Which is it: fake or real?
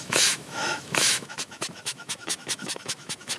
fake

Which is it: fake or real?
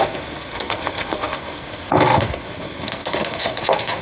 fake